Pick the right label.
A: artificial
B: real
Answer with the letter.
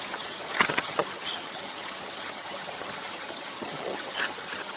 A